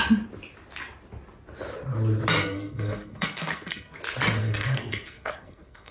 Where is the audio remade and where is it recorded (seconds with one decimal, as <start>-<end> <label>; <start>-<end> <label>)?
0.0-2.4 recorded; 2.4-4.0 remade; 4.0-4.4 recorded; 4.4-5.9 remade